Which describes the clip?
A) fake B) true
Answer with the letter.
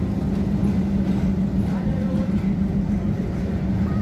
B